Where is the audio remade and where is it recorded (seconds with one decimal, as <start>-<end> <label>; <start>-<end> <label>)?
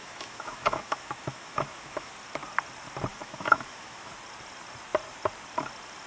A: 0.0-2.1 remade; 2.1-3.1 recorded; 3.1-4.1 remade; 4.1-6.1 recorded